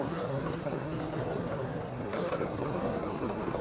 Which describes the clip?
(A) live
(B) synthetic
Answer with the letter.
B